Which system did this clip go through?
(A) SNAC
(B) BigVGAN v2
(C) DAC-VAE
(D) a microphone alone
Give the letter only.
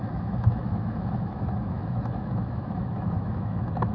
C